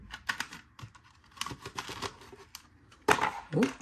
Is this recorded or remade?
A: recorded